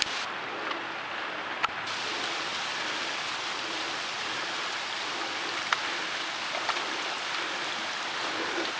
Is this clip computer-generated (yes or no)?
no